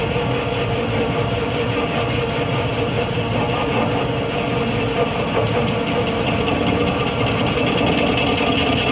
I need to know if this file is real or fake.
real